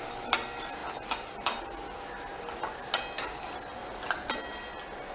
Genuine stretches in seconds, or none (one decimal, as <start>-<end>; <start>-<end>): 0.0-5.1